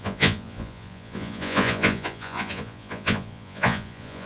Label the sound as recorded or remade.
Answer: remade